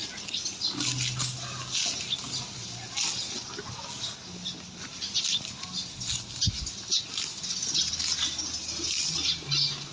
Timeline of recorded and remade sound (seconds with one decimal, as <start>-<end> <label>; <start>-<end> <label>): 0.0-9.9 recorded